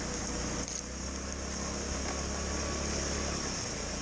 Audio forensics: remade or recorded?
recorded